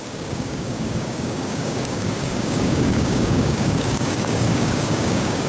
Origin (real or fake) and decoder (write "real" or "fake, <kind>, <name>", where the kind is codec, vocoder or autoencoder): fake, codec, DAC